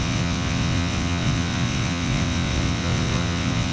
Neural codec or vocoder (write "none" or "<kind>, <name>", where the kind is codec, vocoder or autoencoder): vocoder, WaveNeXt